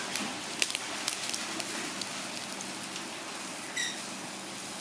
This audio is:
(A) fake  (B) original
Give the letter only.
B